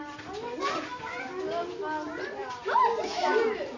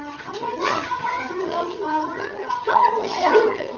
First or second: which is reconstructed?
second